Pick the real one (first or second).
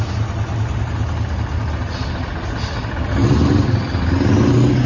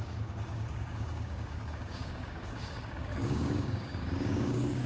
first